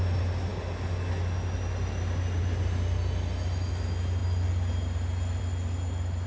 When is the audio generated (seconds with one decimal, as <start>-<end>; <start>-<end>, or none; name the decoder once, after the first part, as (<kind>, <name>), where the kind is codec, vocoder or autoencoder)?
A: none